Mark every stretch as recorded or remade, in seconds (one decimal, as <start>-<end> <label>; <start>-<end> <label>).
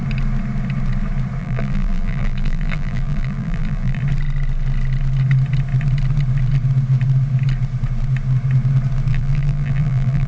0.0-1.4 recorded; 1.4-4.0 remade; 4.0-9.1 recorded; 9.1-10.3 remade